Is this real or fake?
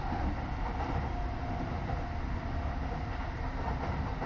real